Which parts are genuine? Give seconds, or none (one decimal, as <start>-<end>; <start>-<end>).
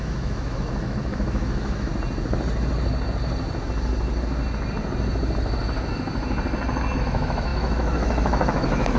1.9-6.9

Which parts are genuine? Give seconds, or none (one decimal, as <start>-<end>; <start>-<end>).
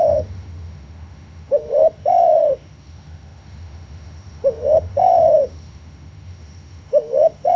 none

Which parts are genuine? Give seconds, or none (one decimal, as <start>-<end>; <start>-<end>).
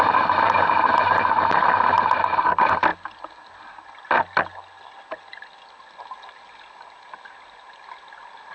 0.0-8.5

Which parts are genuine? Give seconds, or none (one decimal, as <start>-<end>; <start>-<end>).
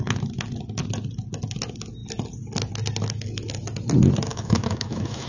0.0-4.3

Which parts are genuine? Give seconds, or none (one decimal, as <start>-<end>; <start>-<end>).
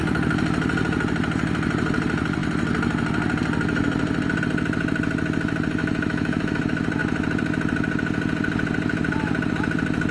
0.0-5.8; 6.6-10.1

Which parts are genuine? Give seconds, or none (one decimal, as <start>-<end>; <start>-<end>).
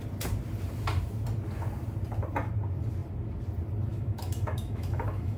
0.0-3.9